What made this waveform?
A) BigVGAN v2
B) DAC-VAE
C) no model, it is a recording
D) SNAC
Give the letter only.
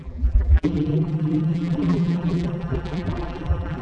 A